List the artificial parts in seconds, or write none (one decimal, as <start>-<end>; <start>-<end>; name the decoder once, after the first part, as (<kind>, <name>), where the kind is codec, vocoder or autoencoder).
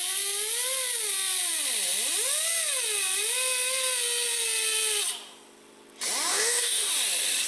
6.3-6.9 (codec, DAC)